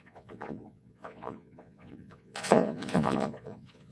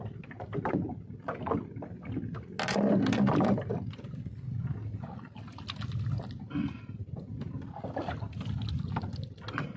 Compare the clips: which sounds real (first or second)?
second